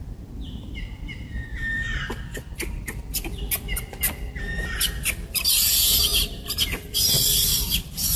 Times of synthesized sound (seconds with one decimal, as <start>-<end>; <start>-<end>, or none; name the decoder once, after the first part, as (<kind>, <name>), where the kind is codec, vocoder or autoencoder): 0.0-1.9 (vocoder, BigVGAN v2); 5.3-8.2